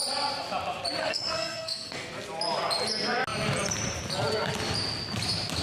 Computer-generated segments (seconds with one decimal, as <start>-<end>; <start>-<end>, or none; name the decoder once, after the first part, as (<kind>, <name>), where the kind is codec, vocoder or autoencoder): 1.0-2.1 (codec, SNAC)